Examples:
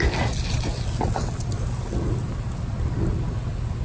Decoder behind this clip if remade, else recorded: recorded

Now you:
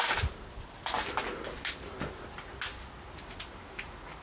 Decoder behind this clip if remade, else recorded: recorded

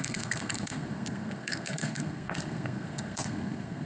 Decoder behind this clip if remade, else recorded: remade, codec, SNAC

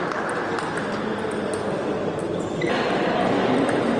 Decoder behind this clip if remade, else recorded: recorded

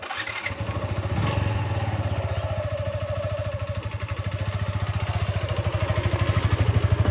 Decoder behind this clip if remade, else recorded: recorded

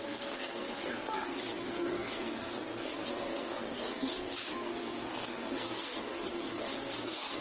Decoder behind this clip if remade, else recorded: remade, codec, SNAC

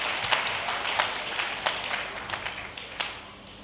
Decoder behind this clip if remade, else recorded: recorded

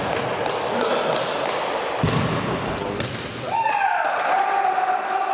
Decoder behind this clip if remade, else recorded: recorded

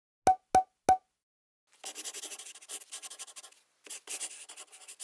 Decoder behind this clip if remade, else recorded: recorded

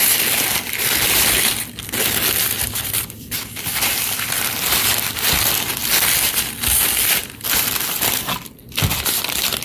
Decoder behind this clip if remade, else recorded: recorded